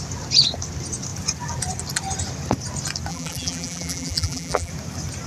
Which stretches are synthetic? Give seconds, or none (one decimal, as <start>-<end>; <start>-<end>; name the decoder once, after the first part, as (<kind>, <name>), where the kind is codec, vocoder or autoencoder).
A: 3.1-4.7 (vocoder, BigVGAN v2)